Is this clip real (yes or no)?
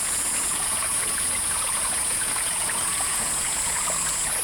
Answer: no